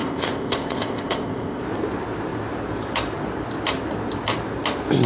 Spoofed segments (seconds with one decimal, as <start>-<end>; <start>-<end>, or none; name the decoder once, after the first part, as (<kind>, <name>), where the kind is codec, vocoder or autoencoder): 0.0-1.6 (codec, ZipCodec)